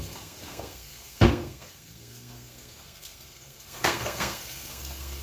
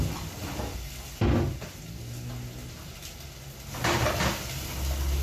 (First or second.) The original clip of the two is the second